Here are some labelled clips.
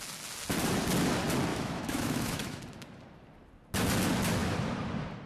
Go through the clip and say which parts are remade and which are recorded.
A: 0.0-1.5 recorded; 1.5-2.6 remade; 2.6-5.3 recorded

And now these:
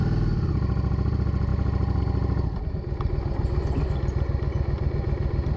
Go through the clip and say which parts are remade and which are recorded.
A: 0.0-5.6 recorded

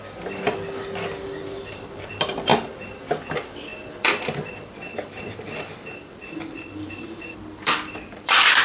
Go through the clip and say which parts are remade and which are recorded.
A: 0.0-2.5 remade; 2.5-3.3 recorded; 3.3-8.6 remade

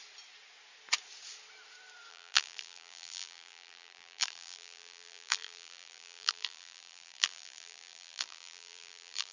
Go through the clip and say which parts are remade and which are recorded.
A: 0.0-2.1 recorded; 2.1-9.3 remade

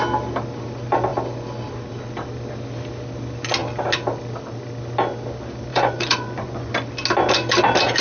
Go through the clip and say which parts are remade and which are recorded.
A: 0.0-5.7 recorded; 5.7-6.7 remade; 6.7-8.0 recorded

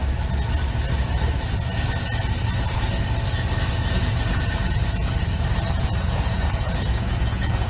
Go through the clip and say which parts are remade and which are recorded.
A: 0.0-3.7 recorded; 3.7-5.1 remade; 5.1-5.8 recorded; 5.8-7.7 remade